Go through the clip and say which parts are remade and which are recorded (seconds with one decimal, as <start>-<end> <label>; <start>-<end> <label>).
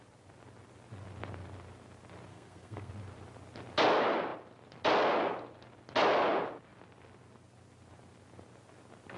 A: 0.0-2.3 recorded; 2.3-2.9 remade; 2.9-9.2 recorded